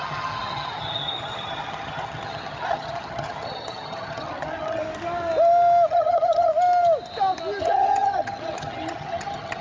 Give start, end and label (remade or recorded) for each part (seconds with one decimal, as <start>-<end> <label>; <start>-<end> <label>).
0.0-4.8 remade; 4.8-5.9 recorded; 5.9-6.5 remade; 6.5-7.6 recorded; 7.6-9.6 remade